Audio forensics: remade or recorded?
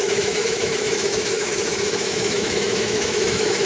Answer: remade